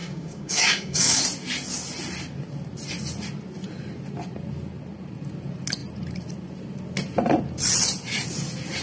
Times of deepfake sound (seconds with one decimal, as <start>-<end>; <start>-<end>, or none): 0.0-1.2